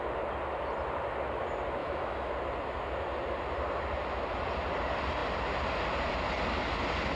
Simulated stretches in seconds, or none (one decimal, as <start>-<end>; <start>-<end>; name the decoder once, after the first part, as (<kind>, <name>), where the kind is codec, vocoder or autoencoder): 1.8-2.3 (autoencoder, DAC-VAE)